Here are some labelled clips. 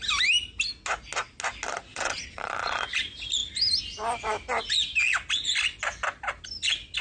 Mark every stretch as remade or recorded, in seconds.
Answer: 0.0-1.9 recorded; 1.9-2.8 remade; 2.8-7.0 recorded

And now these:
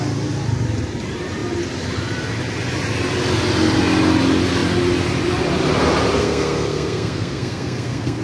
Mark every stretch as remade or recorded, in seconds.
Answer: 0.0-6.2 recorded; 6.2-8.2 remade

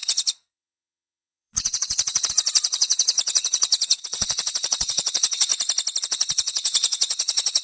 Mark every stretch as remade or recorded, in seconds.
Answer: 0.0-5.5 remade; 5.5-6.0 recorded; 6.0-7.6 remade

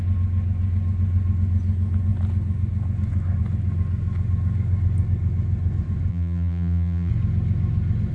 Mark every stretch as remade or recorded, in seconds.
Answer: 0.0-6.1 recorded; 6.1-7.1 remade; 7.1-8.1 recorded